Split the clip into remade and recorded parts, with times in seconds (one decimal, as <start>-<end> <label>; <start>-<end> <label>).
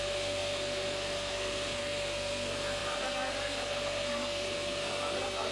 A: 0.0-5.5 remade